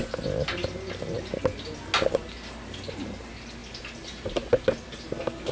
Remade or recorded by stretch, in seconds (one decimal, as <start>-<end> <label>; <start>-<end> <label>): 0.0-5.5 recorded